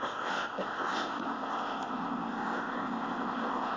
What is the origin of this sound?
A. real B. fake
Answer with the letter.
B